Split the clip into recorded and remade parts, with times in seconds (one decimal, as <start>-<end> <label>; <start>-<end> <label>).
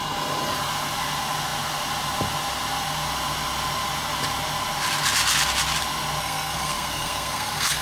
0.0-6.2 recorded; 6.2-7.8 remade